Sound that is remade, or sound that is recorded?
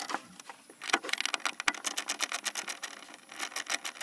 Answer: recorded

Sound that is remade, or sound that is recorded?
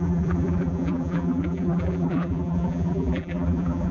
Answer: remade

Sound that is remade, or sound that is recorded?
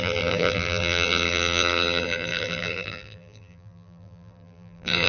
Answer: remade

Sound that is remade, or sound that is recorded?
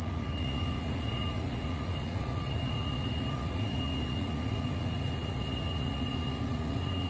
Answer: remade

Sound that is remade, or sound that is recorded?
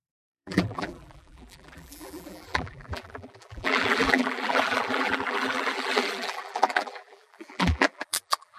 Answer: remade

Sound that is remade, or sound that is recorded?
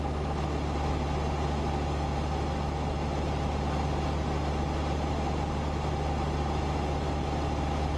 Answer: recorded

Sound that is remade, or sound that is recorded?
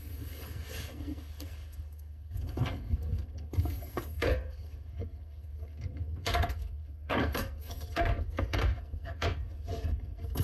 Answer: remade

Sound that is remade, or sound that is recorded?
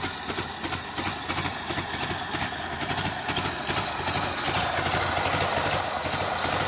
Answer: recorded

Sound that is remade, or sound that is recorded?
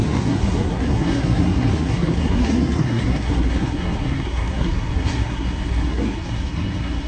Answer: remade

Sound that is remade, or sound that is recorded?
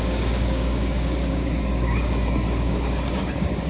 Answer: remade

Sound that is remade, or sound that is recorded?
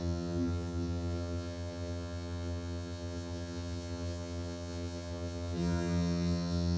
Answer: remade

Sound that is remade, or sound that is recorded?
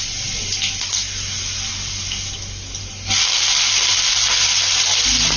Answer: recorded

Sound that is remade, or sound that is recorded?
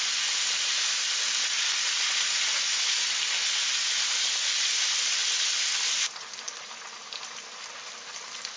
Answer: recorded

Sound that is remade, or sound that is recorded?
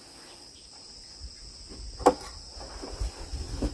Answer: recorded